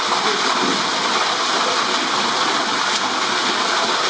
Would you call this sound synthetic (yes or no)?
no